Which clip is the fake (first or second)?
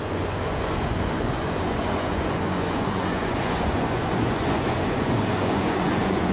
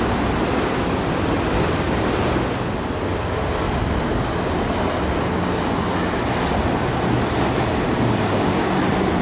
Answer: first